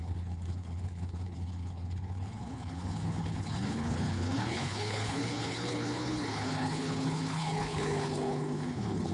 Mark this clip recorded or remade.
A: remade